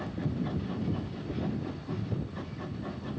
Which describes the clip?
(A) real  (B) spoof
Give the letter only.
A